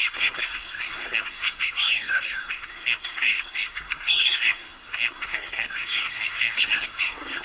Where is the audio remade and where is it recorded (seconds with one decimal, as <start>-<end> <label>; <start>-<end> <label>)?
0.0-7.4 remade